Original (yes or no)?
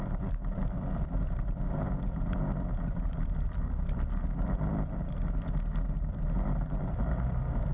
no